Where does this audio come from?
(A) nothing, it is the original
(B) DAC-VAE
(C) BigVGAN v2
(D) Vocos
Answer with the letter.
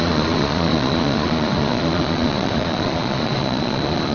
D